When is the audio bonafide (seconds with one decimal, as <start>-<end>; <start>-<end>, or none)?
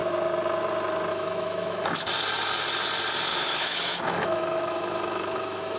0.0-1.1; 2.0-3.3